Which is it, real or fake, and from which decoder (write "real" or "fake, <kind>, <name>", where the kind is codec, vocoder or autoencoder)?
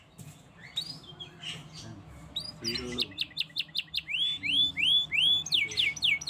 real